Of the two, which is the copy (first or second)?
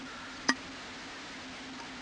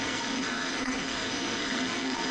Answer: second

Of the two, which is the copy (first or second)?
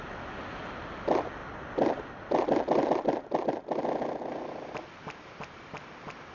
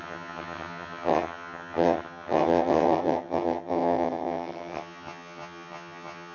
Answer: second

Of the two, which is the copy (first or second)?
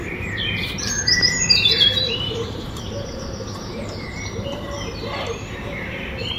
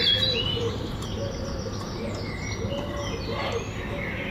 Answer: first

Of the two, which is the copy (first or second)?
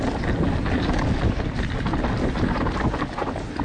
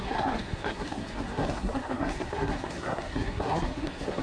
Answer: second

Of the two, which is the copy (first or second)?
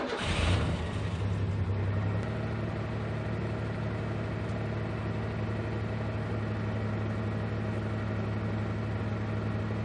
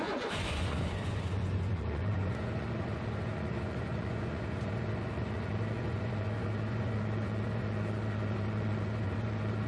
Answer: second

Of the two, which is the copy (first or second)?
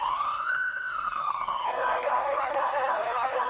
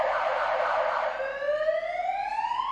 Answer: first